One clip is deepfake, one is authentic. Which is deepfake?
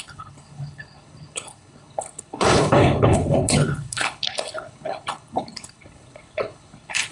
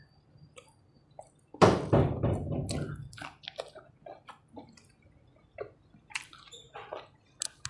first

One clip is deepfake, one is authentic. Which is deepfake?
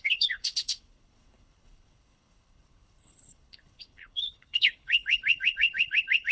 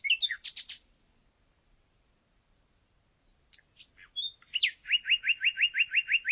first